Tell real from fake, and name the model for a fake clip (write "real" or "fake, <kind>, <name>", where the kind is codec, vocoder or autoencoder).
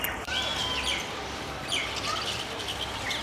real